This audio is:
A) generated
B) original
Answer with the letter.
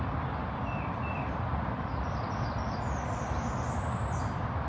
B